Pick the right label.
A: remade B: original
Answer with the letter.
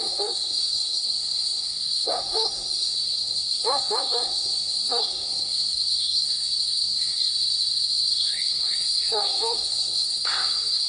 A